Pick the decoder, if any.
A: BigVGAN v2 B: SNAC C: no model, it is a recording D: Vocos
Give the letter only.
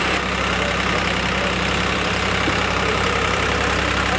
A